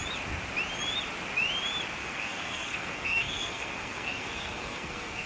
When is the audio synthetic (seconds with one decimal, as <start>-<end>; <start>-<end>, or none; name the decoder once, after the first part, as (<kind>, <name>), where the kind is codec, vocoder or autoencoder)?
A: 2.0-5.3 (codec, SNAC)